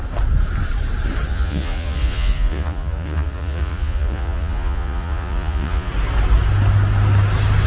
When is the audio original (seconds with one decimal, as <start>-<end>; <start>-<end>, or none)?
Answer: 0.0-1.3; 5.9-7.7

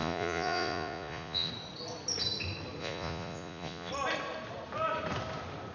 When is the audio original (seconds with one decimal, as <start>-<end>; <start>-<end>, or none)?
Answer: 1.5-2.8; 3.9-5.7

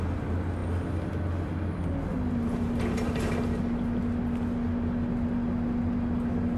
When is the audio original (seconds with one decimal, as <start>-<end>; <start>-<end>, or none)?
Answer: 0.0-6.6